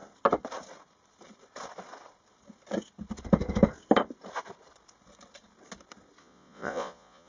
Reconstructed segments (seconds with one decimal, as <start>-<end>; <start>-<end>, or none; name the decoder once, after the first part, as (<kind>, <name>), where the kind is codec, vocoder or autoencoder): 6.2-7.3 (vocoder, Vocos)